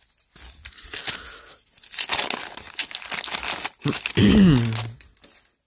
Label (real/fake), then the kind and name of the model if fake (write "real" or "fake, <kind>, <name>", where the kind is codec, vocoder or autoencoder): real